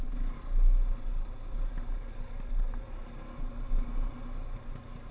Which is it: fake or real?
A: real